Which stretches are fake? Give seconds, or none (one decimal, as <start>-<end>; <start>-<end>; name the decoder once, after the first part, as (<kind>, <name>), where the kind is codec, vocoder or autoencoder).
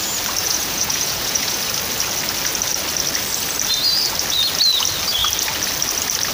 0.4-1.6 (vocoder, Vocos)